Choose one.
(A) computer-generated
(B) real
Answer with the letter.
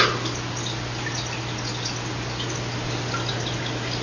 B